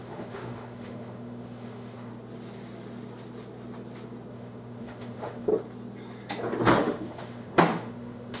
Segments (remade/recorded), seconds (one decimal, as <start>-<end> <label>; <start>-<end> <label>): 0.0-2.1 remade; 2.1-4.3 recorded; 4.3-5.5 remade; 5.5-6.8 recorded; 6.8-8.4 remade